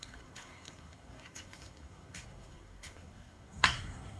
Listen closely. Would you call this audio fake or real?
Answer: fake